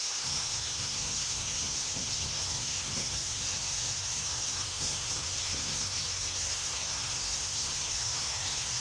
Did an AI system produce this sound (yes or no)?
yes